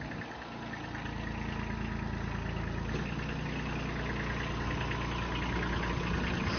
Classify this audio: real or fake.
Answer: real